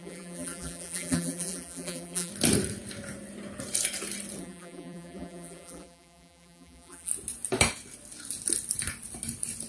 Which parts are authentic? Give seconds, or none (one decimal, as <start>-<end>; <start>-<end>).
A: 2.3-4.4; 7.1-9.7